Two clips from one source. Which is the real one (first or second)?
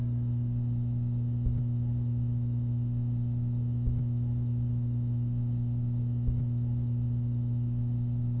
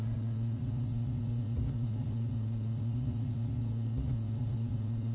first